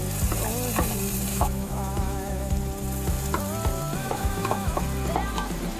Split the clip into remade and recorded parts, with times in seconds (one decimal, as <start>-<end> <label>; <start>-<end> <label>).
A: 0.0-1.3 recorded; 1.3-2.5 remade; 2.5-4.0 recorded; 4.0-4.8 remade; 4.8-5.8 recorded